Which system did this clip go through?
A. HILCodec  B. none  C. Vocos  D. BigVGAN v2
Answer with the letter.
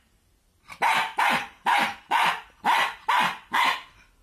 D